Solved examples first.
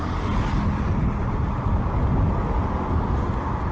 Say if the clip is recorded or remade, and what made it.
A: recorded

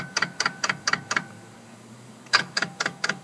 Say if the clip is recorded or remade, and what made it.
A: remade, codec, DAC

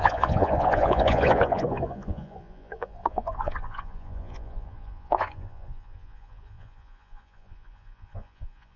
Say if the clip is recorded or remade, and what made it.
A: remade, vocoder, Vocos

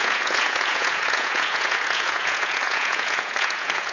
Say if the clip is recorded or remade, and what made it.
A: remade, vocoder, Vocos